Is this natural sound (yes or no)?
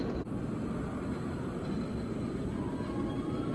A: yes